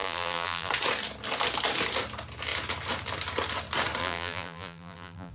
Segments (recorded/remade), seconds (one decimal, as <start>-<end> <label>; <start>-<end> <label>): 0.0-0.7 remade; 0.7-4.0 recorded; 4.0-5.3 remade